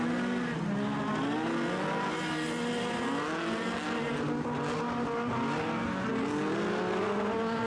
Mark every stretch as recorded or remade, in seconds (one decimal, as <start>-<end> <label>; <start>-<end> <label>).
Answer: 0.0-7.7 recorded